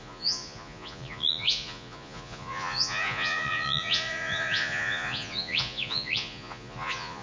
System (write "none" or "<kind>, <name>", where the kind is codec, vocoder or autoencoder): vocoder, Vocos